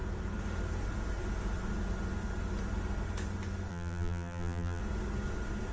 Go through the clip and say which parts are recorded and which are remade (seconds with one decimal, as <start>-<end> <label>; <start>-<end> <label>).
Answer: 0.0-3.7 recorded; 3.7-4.8 remade; 4.8-5.7 recorded